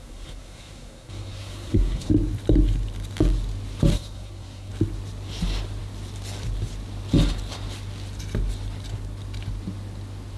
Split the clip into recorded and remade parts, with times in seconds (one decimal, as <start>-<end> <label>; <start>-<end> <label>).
0.0-2.1 remade; 2.1-3.9 recorded; 3.9-4.7 remade; 4.7-10.4 recorded